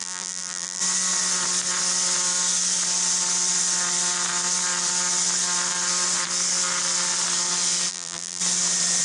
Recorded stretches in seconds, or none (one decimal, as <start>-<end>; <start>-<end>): 0.8-7.9; 8.4-9.0